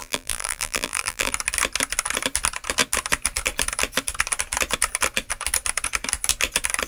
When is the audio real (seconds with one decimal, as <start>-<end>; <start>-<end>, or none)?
1.3-6.9